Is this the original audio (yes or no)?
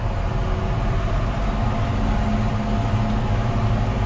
yes